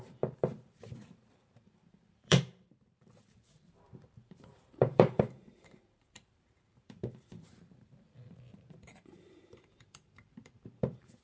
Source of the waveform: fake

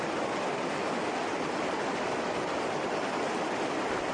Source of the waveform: real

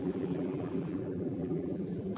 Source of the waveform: fake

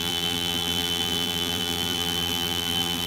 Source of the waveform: fake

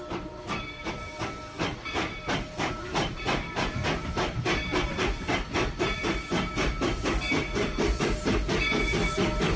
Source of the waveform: fake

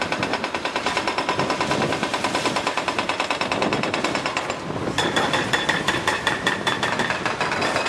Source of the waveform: fake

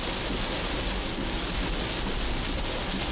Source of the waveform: real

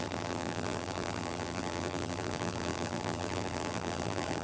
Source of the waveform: fake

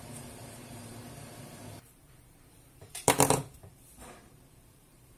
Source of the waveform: fake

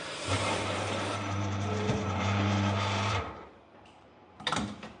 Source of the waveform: fake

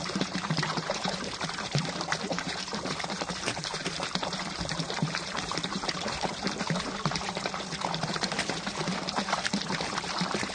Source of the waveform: fake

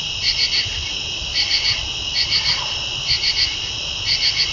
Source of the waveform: real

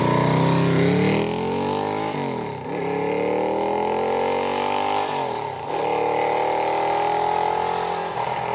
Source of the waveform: real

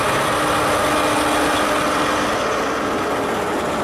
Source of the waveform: real